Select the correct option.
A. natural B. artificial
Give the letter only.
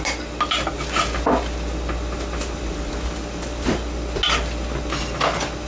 A